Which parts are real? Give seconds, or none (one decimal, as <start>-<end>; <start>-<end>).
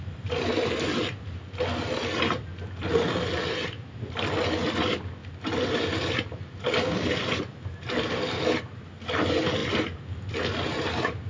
0.0-11.3